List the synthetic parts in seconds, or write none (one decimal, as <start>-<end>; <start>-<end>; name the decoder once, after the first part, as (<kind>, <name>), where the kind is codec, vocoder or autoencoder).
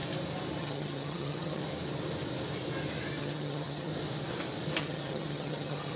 0.6-1.6 (vocoder, HiFi-GAN); 3.2-3.9; 4.8-6.0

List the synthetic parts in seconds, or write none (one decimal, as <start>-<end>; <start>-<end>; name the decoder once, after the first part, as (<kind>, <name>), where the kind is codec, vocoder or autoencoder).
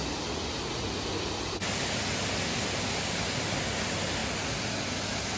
none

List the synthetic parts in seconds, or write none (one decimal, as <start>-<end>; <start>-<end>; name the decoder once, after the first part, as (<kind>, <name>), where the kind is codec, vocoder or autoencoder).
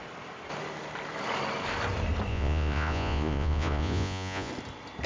2.3-4.5 (vocoder, Vocos)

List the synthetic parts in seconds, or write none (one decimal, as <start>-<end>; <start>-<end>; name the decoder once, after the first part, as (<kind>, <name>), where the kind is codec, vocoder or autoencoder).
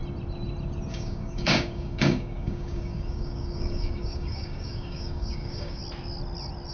0.9-5.8 (codec, DAC)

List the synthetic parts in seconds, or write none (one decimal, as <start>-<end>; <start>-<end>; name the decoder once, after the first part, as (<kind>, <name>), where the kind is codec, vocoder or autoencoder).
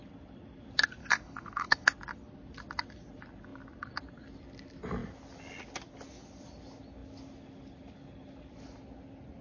1.0-1.9 (codec, HILCodec)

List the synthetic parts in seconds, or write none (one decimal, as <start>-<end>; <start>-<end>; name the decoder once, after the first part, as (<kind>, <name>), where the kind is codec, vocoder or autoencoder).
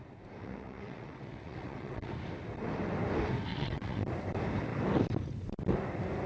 0.4-2.1 (vocoder, WaveNeXt); 3.5-4.1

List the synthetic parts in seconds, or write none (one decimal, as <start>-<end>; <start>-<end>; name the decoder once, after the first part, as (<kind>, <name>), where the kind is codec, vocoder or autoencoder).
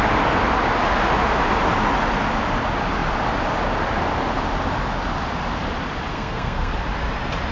6.1-6.7 (codec, SNAC)